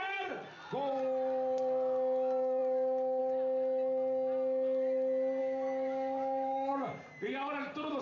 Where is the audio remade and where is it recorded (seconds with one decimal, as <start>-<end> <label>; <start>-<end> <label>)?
0.0-5.4 recorded; 5.4-6.7 remade; 6.7-8.0 recorded